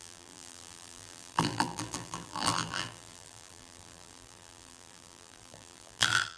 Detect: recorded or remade remade